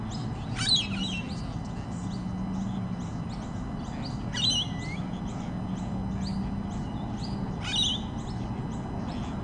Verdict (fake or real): real